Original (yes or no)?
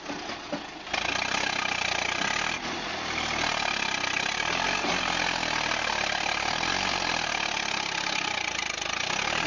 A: yes